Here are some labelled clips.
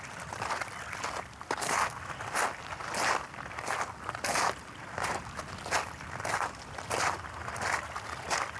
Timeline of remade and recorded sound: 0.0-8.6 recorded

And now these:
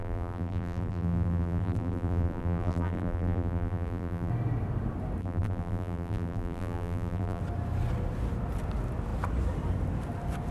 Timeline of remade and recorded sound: 0.0-4.3 remade; 4.3-5.2 recorded; 5.2-7.4 remade; 7.4-10.5 recorded

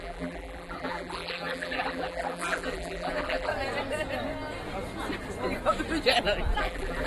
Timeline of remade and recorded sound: 0.0-3.5 remade; 3.5-6.6 recorded; 6.6-7.1 remade